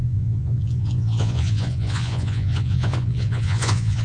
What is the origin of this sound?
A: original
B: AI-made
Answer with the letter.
B